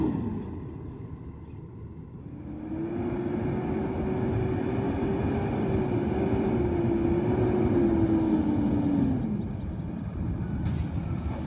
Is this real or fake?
real